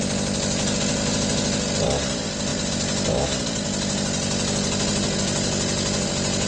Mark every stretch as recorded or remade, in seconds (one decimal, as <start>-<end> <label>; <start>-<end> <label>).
0.0-6.5 recorded